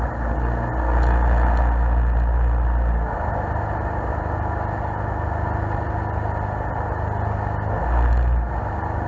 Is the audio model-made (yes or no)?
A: no